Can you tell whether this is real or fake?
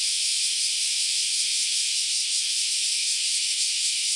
fake